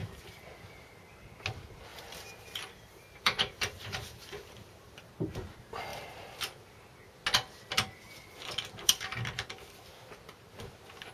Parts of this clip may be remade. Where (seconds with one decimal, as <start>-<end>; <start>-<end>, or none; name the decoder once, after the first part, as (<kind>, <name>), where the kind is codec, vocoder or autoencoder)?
1.9-5.1 (vocoder, BigVGAN v2)